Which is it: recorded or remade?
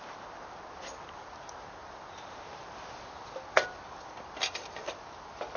recorded